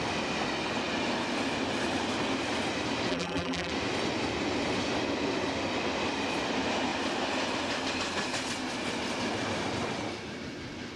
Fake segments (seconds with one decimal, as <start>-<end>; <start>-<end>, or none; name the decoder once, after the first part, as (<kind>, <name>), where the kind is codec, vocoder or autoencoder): 3.1-3.7 (vocoder, BigVGAN v2)